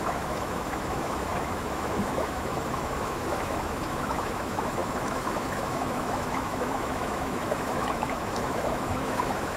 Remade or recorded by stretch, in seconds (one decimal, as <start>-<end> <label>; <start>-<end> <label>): 0.0-9.6 remade